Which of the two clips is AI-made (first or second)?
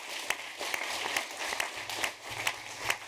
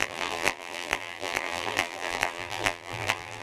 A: second